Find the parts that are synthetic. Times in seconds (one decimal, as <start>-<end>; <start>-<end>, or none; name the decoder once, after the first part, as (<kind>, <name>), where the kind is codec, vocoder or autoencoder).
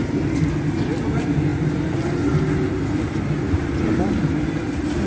none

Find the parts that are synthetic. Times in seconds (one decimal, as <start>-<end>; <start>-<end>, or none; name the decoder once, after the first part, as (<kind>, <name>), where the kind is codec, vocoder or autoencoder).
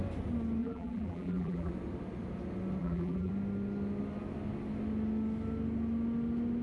0.6-1.7 (vocoder, BigVGAN v2); 2.8-3.3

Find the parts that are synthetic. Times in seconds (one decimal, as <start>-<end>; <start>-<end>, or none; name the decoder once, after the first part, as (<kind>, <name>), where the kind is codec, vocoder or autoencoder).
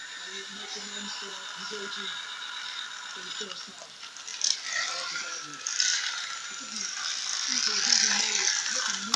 5.7-7.0 (vocoder, BigVGAN v2)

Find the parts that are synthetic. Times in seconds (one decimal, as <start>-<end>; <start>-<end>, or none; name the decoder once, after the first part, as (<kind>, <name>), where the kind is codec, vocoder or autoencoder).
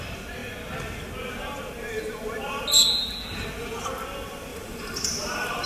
4.5-5.7 (vocoder, BigVGAN v2)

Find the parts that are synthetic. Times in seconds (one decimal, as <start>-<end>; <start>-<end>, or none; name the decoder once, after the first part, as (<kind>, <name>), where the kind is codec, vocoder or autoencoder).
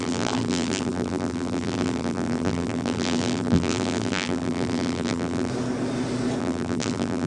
0.0-5.5 (vocoder, BigVGAN v2); 6.4-7.3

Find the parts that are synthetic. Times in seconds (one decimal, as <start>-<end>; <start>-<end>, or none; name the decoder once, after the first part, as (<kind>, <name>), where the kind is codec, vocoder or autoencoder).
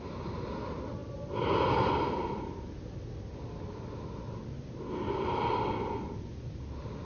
none